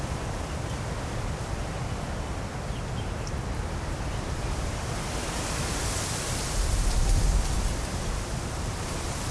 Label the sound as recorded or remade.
recorded